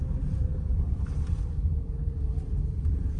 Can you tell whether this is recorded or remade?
remade